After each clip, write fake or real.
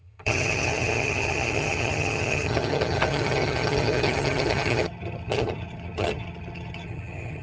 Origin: fake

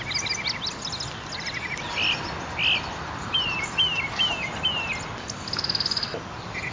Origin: real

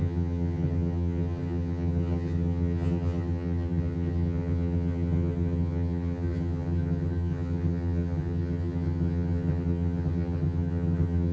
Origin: fake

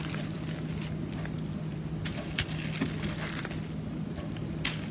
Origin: real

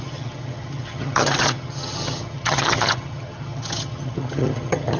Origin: fake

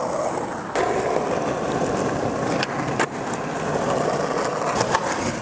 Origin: real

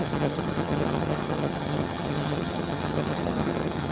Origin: fake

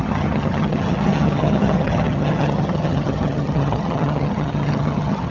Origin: fake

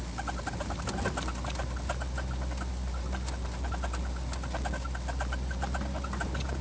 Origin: real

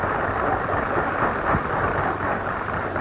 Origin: real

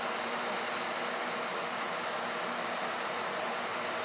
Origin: real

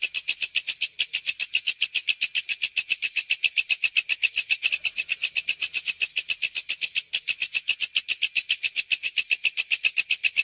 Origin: real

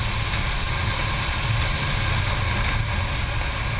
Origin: real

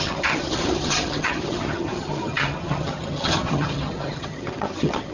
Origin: fake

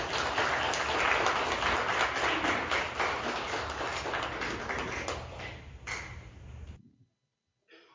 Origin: real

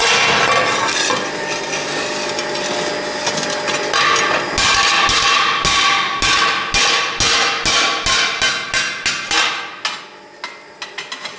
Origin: real